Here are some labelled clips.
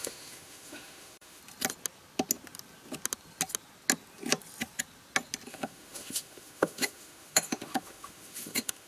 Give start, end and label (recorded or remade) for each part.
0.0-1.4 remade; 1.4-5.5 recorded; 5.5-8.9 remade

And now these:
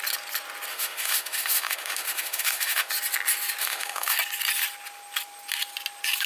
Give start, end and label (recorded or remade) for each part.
0.0-0.7 recorded; 0.7-2.9 remade; 2.9-3.6 recorded; 3.6-4.2 remade; 4.2-6.3 recorded

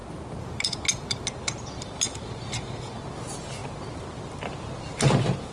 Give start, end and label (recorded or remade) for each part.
0.0-5.5 recorded

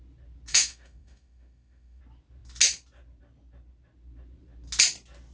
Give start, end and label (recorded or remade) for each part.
0.0-0.5 recorded; 0.5-2.0 remade; 2.0-5.3 recorded